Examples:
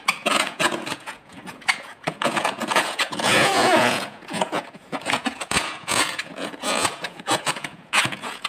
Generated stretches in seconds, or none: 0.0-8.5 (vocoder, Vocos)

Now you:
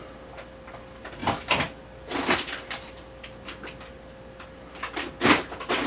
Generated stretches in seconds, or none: none

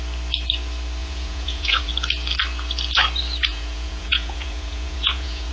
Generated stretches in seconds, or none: 1.0-1.9 (vocoder, Vocos); 3.5-5.5

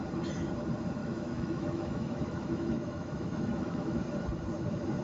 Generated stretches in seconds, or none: 1.0-4.0 (autoencoder, DAC-VAE)

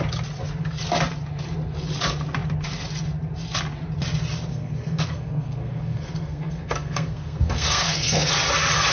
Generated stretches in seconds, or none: 4.5-8.3 (codec, SNAC)